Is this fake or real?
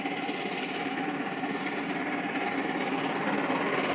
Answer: real